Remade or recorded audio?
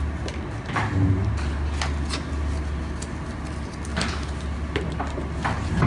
recorded